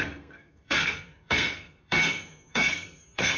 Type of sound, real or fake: fake